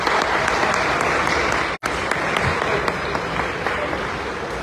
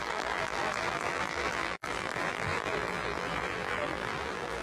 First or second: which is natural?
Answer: first